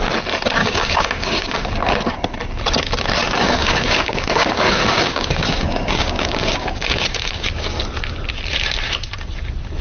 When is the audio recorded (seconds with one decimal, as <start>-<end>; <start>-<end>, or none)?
0.0-0.6; 1.7-3.2; 7.8-9.8